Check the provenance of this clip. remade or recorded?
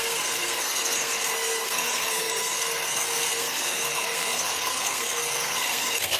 remade